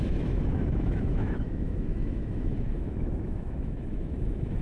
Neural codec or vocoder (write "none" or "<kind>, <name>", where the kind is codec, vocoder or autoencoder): autoencoder, DAC-VAE